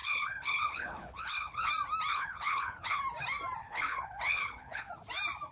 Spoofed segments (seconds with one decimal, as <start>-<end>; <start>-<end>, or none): 0.0-1.7; 2.1-3.0; 3.6-4.9